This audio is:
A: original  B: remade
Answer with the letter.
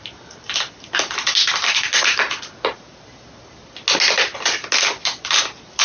A